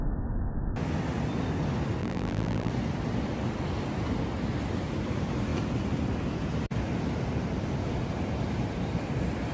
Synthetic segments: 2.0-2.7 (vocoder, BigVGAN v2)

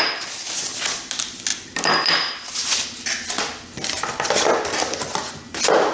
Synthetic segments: none

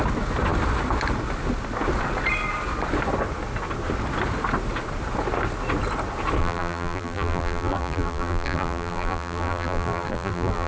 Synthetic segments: 6.4-10.7 (vocoder, BigVGAN v2)

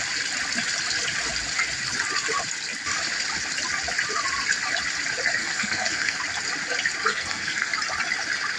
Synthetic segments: 5.4-6.2 (codec, SNAC); 7.1-7.7